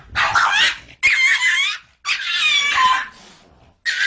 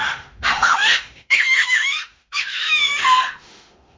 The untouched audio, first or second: first